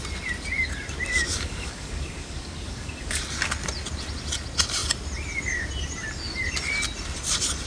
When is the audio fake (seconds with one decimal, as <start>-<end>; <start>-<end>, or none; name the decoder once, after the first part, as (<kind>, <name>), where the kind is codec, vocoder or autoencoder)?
1.3-3.2 (codec, DAC)